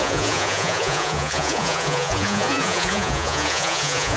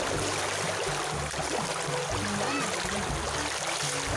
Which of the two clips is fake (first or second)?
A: first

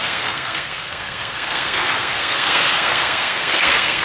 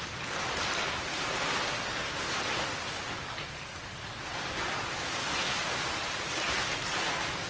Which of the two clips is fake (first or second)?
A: first